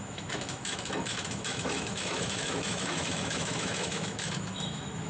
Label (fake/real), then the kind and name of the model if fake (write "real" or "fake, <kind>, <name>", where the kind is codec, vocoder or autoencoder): fake, autoencoder, DAC-VAE